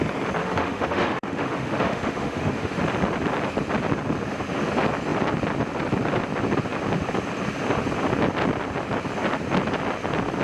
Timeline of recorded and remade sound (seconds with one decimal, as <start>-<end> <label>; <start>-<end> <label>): 0.0-0.4 recorded; 0.4-2.8 remade; 2.8-10.4 recorded